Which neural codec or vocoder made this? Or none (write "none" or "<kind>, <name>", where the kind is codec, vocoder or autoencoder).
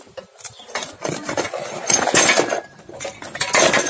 none